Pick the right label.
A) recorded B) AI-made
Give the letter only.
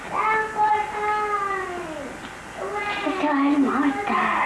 A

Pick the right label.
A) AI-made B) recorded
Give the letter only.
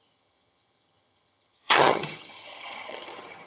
A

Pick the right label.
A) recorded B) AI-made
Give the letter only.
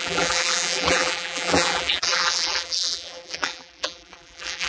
B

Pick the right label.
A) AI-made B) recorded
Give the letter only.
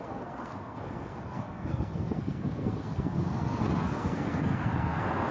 A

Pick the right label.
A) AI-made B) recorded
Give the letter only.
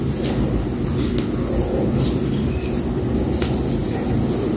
B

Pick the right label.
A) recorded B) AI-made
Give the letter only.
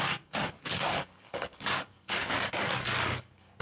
B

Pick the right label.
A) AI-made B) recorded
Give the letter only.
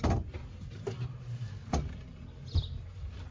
B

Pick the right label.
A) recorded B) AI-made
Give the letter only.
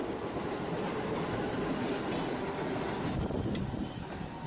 A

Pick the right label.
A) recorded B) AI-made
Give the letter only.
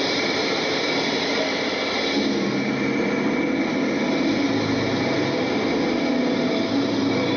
A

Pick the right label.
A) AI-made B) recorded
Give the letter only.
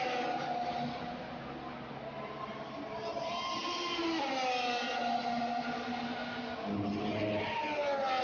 B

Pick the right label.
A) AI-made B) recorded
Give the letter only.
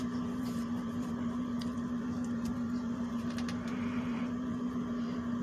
A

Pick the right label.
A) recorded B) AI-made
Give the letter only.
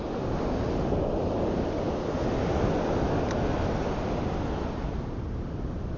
A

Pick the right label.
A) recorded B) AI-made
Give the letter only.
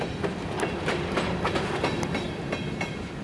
A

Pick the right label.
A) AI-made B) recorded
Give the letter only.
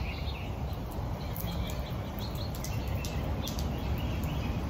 B